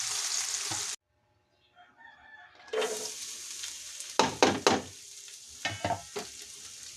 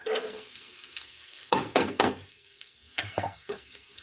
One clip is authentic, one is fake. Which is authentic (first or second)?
first